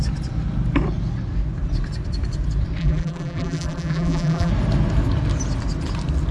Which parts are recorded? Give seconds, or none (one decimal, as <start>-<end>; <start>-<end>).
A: 0.0-2.8; 4.5-6.3